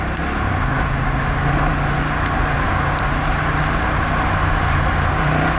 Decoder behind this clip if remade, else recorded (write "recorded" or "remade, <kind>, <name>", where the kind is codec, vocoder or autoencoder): recorded